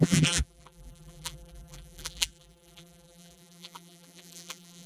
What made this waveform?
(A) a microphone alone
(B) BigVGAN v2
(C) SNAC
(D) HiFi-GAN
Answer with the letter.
B